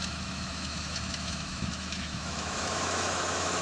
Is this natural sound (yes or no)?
no